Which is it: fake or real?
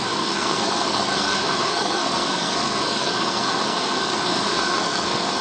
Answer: fake